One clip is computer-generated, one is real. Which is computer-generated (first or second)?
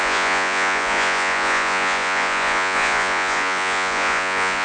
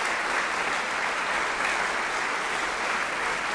first